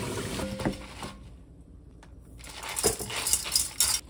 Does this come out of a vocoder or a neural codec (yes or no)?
no